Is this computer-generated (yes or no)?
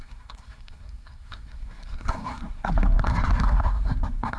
yes